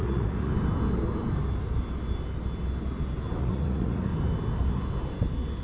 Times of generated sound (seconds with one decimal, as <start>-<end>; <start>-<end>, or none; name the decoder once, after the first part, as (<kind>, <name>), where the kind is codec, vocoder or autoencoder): 0.0-0.5 (vocoder, Vocos); 3.4-4.1